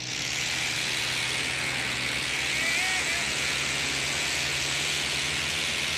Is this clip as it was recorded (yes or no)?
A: no